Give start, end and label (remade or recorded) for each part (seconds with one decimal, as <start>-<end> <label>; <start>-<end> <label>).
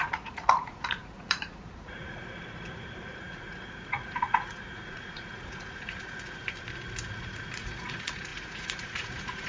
0.0-6.4 remade; 6.4-7.1 recorded; 7.1-9.5 remade